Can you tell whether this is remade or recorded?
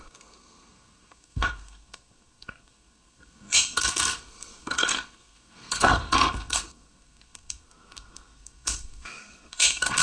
remade